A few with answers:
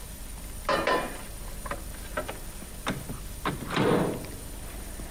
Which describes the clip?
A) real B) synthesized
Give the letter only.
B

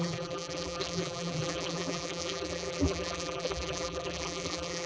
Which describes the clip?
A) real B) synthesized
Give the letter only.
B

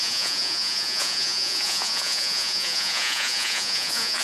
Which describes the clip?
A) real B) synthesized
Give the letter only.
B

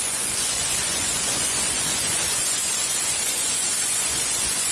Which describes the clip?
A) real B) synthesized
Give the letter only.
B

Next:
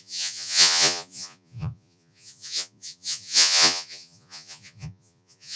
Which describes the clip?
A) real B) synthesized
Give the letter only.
B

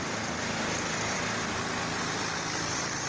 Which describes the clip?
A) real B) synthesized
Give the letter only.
A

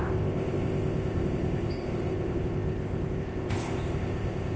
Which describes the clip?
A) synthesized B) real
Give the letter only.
A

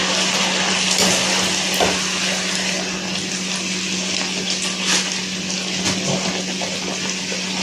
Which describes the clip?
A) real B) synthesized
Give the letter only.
A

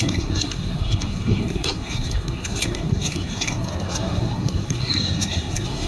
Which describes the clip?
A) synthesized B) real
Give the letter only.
A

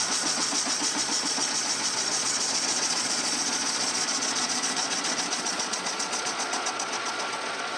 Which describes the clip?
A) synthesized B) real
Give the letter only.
A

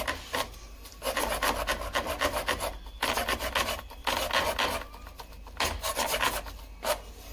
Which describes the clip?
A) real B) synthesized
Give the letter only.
A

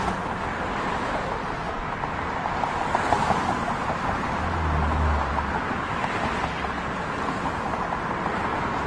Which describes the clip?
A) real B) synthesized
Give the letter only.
A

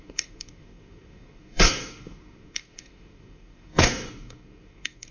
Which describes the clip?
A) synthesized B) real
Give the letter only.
A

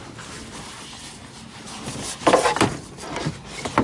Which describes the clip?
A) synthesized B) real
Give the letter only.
B